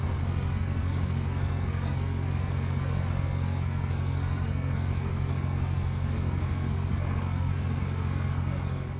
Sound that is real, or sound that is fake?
fake